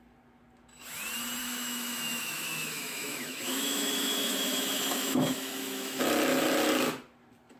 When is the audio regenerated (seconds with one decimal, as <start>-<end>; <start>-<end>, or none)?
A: 1.4-6.0